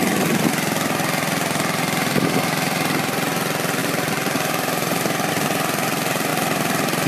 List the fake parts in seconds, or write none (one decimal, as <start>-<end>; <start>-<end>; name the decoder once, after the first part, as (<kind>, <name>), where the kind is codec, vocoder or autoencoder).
3.8-5.3 (vocoder, BigVGAN v2)